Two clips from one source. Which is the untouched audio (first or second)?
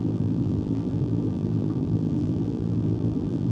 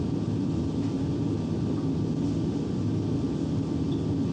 second